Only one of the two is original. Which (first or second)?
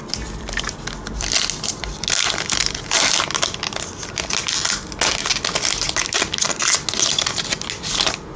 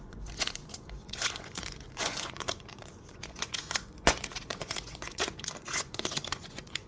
first